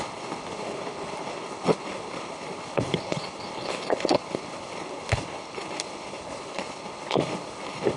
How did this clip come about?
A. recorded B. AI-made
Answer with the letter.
B